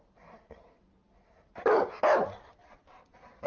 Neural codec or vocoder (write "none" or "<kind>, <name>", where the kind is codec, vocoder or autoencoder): none